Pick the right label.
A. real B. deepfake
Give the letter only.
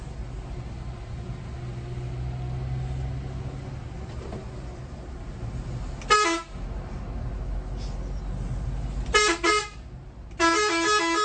A